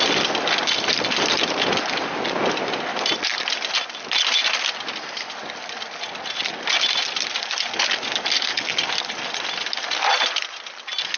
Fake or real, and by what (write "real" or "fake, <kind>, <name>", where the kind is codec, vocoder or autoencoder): real